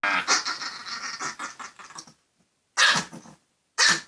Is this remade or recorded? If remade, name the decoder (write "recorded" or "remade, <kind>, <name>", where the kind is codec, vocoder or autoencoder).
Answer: recorded